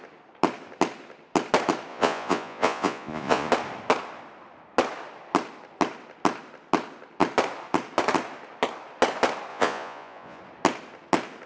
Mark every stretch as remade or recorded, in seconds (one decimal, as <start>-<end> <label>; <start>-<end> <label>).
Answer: 0.0-1.9 recorded; 1.9-3.5 remade; 3.5-9.5 recorded; 9.5-10.4 remade; 10.4-11.5 recorded